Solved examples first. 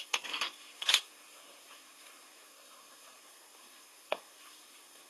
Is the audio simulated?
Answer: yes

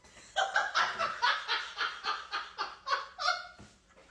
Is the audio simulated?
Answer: no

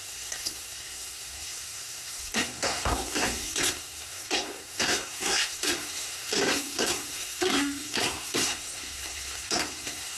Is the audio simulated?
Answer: yes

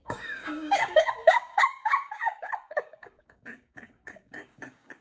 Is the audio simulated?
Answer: yes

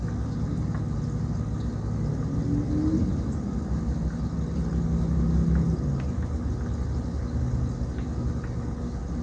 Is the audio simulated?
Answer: no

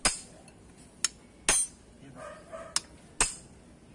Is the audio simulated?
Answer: no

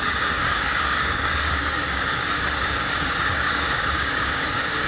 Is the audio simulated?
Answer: yes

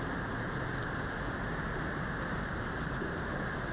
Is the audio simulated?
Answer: no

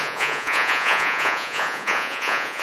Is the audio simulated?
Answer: yes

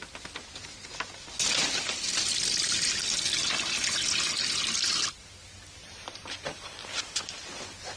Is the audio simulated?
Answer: no